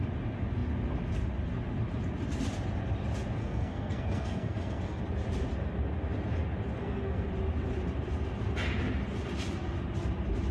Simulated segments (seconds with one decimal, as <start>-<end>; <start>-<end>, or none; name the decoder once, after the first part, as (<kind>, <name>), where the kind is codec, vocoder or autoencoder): 3.4-5.0 (codec, SNAC); 6.8-7.3